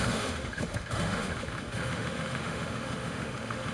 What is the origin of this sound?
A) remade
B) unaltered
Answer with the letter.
A